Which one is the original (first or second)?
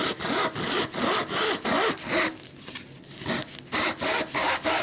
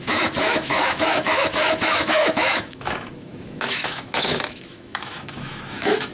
first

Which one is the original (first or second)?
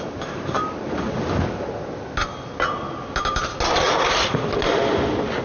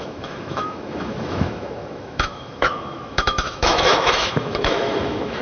first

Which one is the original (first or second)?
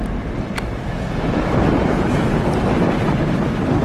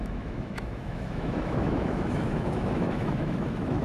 first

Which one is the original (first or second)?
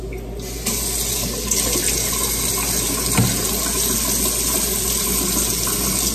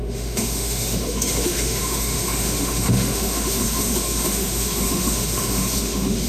first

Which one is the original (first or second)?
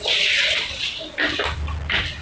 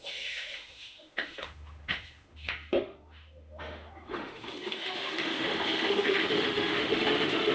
first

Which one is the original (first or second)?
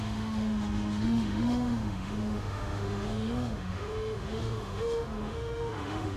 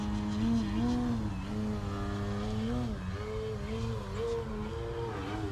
second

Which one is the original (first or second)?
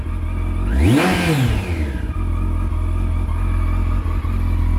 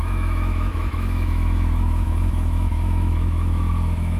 first